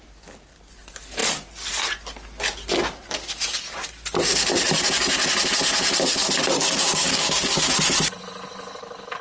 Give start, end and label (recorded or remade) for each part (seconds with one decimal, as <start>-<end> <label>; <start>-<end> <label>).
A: 0.0-6.6 recorded; 6.6-7.7 remade; 7.7-9.2 recorded

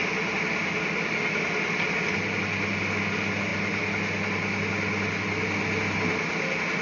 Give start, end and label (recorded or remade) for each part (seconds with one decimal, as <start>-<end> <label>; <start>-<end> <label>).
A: 0.0-6.8 recorded

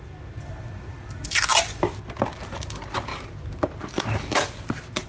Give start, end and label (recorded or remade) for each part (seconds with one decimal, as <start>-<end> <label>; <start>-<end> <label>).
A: 0.0-5.1 recorded

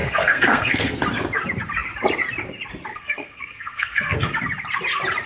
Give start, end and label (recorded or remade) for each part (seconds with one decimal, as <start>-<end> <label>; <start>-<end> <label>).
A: 0.0-1.0 remade; 1.0-2.9 recorded; 2.9-4.3 remade; 4.3-5.3 recorded

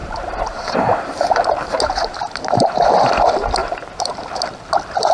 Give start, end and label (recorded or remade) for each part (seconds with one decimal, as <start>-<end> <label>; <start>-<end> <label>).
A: 0.0-2.9 remade; 2.9-3.6 recorded; 3.6-4.2 remade; 4.2-5.1 recorded